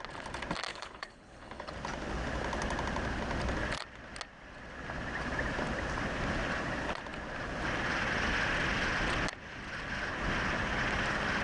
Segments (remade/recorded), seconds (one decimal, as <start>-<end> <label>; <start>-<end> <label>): 0.0-0.7 recorded; 0.7-1.7 remade; 1.7-11.4 recorded